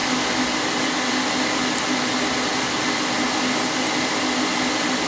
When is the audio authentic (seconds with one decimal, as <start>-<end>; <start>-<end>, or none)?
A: 0.0-5.1

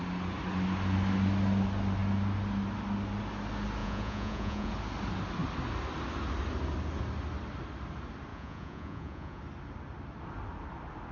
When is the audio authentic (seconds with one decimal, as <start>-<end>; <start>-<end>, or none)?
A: 0.0-3.8; 4.7-8.3; 9.4-11.1

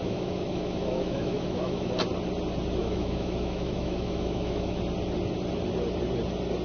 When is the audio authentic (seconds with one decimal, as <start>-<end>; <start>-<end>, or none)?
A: 1.9-2.8; 4.8-6.6

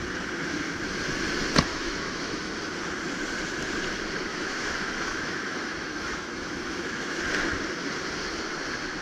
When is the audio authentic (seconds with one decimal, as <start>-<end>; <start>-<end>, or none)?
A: 0.0-1.7; 2.5-4.3; 7.2-9.0

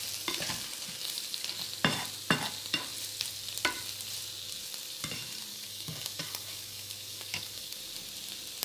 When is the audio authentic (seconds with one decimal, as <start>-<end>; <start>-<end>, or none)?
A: 0.0-5.5; 7.8-8.6